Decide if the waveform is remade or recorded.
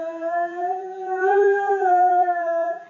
remade